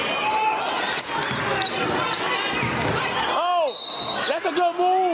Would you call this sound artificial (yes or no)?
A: no